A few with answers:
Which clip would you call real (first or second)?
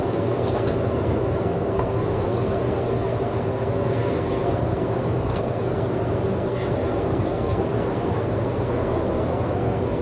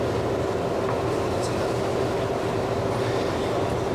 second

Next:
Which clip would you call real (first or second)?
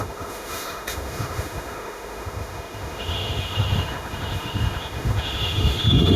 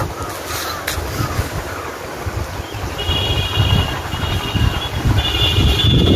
second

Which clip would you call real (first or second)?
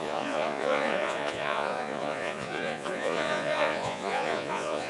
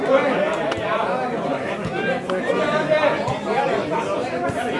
second